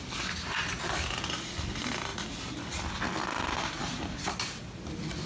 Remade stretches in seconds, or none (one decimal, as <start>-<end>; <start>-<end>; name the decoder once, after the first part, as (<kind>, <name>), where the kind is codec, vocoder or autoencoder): none